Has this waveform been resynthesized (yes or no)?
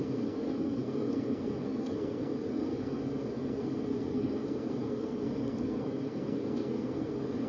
yes